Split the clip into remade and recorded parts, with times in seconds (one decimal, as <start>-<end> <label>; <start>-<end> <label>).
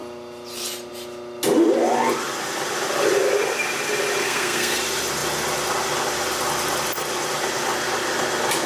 0.0-4.2 recorded; 4.2-4.8 remade; 4.8-8.7 recorded